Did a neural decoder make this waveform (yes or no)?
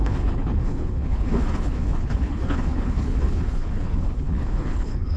yes